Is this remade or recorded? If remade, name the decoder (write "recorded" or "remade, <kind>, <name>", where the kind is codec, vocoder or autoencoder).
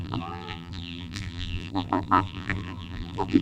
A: remade, vocoder, BigVGAN v2